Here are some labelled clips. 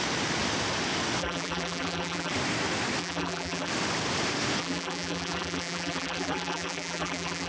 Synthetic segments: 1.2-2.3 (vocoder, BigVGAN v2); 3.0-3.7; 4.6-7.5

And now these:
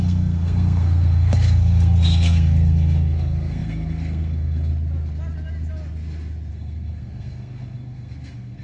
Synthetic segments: 0.0-4.7 (codec, SNAC); 6.5-8.6

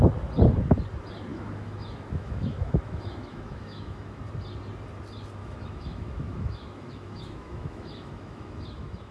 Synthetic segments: 1.3-4.2 (autoencoder, DAC-VAE); 5.4-9.1

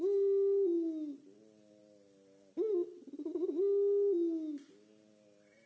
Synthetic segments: none